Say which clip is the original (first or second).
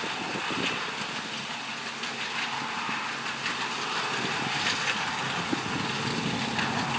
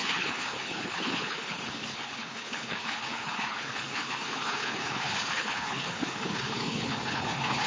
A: first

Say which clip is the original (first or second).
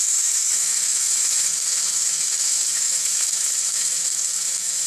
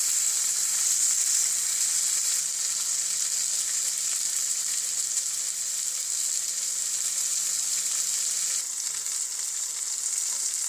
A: second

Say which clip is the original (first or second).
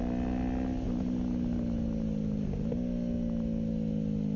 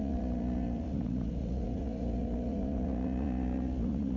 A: first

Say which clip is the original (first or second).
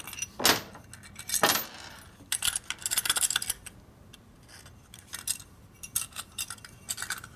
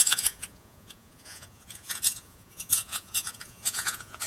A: first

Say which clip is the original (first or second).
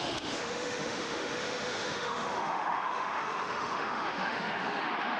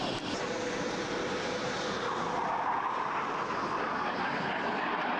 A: second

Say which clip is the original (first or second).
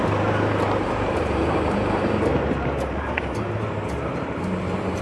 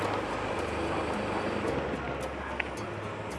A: second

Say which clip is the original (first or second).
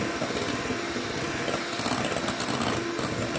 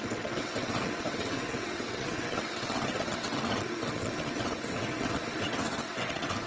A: first